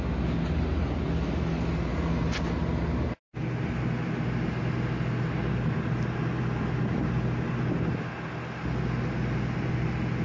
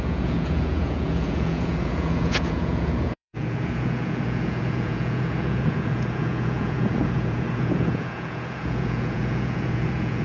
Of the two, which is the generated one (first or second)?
second